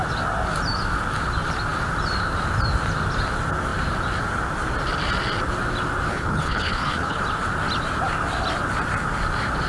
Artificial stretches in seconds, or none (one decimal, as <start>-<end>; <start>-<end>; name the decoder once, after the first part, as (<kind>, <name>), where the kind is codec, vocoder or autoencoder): 6.1-7.2 (codec, HILCodec)